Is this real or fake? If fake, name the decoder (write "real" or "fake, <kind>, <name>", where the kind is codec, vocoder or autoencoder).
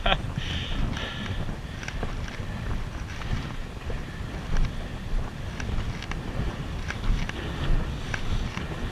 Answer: real